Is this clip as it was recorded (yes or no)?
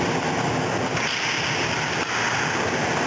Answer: yes